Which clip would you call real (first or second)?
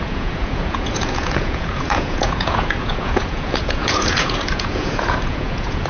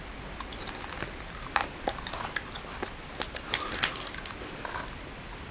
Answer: second